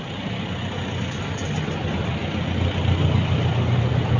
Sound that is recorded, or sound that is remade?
recorded